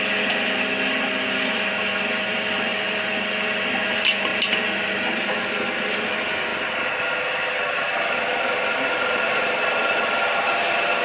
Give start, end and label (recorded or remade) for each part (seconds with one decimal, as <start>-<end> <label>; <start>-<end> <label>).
0.0-11.0 recorded